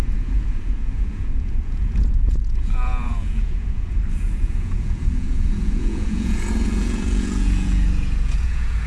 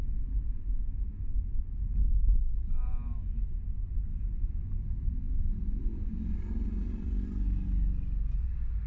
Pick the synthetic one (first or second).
first